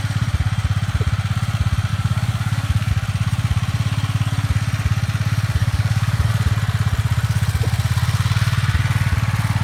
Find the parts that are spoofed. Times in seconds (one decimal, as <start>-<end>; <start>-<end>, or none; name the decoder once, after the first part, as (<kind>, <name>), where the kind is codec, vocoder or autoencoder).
1.9-2.9 (codec, DAC); 5.6-6.3